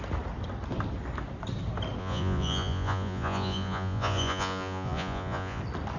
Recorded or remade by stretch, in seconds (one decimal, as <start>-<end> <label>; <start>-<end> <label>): 0.0-2.0 recorded; 2.0-5.6 remade; 5.6-6.0 recorded

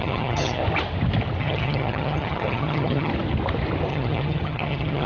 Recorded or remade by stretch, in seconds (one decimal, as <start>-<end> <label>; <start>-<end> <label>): 0.0-0.6 remade; 0.6-1.4 recorded; 1.4-3.1 remade; 3.1-3.9 recorded; 3.9-5.1 remade

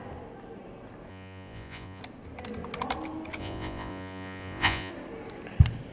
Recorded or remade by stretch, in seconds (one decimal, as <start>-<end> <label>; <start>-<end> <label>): 0.0-1.1 recorded; 1.1-2.0 remade; 2.0-3.4 recorded; 3.4-4.9 remade; 4.9-5.9 recorded